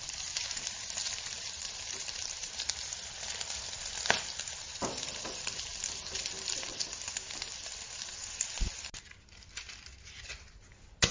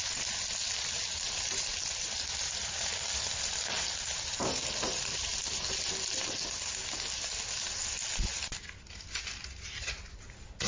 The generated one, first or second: first